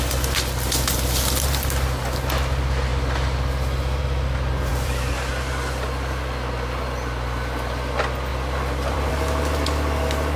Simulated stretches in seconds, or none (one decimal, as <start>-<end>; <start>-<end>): 4.7-5.3; 8.3-9.1